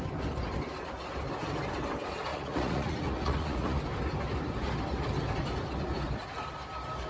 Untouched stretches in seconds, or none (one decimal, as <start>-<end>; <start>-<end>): 0.0-2.3; 3.8-7.1